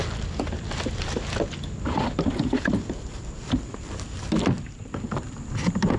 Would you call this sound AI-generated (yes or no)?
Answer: no